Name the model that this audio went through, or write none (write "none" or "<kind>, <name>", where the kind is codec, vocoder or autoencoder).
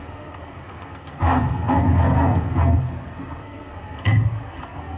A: codec, SNAC